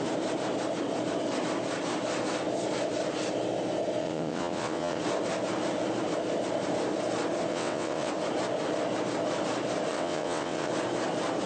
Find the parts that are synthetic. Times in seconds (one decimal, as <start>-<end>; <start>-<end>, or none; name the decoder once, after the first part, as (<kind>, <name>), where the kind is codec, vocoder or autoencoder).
4.0-5.0 (vocoder, WaveNeXt); 7.5-8.1; 9.9-10.7